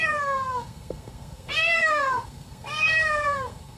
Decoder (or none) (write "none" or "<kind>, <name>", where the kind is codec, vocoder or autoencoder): codec, SNAC